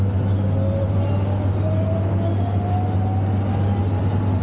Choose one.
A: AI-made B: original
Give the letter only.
B